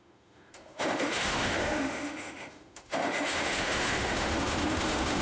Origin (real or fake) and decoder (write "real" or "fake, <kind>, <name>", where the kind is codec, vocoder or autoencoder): fake, autoencoder, DAC-VAE